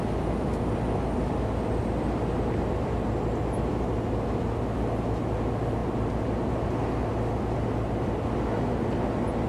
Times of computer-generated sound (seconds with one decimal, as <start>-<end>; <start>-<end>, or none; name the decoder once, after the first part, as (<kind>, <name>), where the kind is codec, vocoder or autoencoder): none